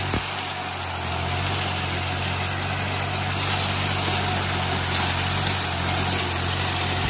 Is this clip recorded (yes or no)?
yes